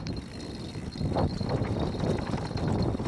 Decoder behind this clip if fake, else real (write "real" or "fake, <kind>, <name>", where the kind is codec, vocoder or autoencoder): real